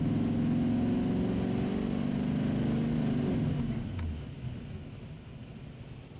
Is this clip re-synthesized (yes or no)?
no